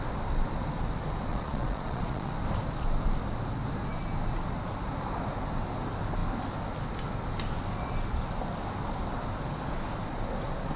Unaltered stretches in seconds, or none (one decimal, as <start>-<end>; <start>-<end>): 0.0-1.3; 2.3-10.8